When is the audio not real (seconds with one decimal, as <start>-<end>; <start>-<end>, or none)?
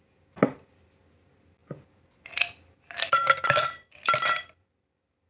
1.6-4.4